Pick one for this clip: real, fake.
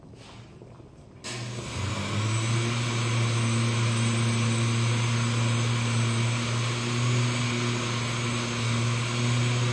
real